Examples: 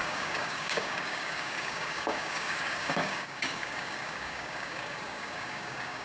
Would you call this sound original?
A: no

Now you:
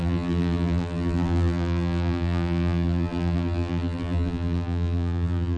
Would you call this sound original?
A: no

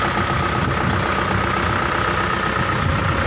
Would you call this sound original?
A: yes